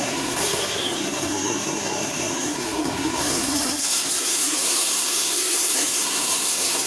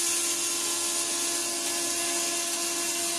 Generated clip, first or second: first